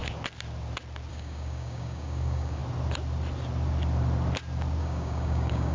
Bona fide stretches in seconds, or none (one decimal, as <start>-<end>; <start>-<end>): 0.0-1.1; 2.6-4.8